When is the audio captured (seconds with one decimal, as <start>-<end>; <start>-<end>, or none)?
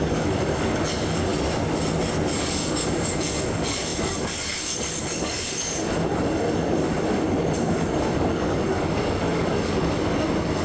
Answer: 1.3-2.4